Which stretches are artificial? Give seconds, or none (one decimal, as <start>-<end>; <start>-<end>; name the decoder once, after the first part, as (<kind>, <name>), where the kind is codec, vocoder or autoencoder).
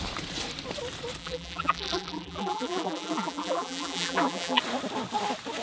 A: 1.2-4.6 (vocoder, BigVGAN v2)